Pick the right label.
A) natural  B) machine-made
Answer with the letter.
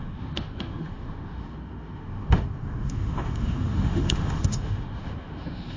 B